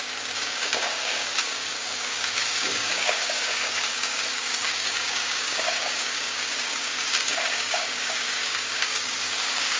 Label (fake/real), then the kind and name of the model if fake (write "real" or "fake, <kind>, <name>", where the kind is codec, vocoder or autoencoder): fake, codec, DAC